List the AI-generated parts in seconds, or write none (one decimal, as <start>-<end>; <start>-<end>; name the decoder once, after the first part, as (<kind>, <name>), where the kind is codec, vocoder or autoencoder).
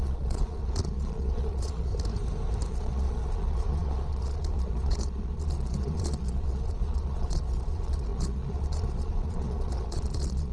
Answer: 0.0-1.9 (vocoder, Vocos); 2.7-10.5